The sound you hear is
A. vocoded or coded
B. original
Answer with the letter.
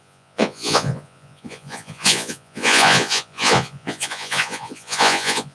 A